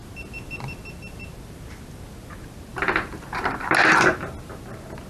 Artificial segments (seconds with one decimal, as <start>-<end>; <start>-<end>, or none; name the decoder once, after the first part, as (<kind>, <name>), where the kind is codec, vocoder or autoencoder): 2.7-4.0 (vocoder, BigVGAN v2)